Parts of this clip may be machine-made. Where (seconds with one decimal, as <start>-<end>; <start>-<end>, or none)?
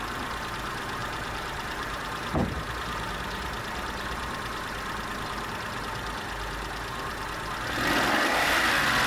1.0-3.2